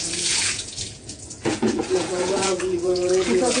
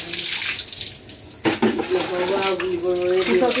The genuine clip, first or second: second